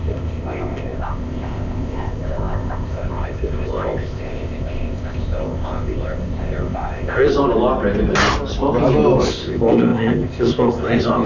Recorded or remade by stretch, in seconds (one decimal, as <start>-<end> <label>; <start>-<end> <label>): 0.0-7.3 remade; 7.3-9.3 recorded; 9.3-11.3 remade